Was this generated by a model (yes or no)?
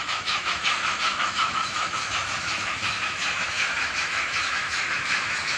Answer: yes